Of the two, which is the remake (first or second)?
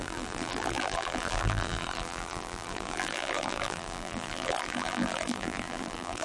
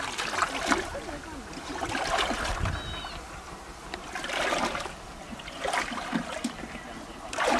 first